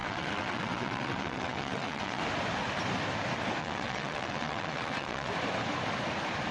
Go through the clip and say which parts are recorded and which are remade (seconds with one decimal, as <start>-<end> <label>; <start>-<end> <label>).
0.0-2.2 remade; 2.2-3.6 recorded; 3.6-5.3 remade; 5.3-6.5 recorded